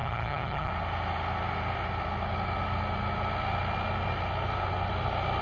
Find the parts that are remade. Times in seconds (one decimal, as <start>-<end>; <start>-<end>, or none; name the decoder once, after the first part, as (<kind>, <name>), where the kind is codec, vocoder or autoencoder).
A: 0.0-0.7 (vocoder, HiFi-GAN)